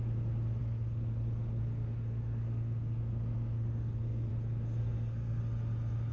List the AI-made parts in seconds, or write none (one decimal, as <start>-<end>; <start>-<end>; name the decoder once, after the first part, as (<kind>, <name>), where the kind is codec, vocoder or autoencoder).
0.6-4.3 (codec, SNAC); 4.8-5.4